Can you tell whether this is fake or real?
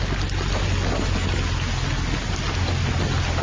real